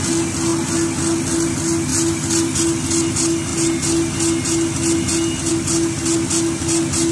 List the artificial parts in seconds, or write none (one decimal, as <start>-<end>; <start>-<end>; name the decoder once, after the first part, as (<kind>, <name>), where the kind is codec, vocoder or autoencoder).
none